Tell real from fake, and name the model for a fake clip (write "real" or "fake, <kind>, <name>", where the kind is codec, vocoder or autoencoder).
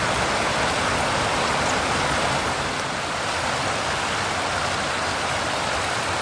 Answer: real